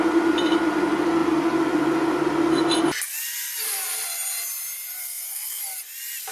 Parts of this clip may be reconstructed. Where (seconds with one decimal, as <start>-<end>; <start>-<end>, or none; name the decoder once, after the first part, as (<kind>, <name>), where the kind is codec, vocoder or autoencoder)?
5.0-5.6 (codec, SNAC)